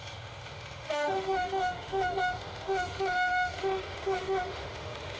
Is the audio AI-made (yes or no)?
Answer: yes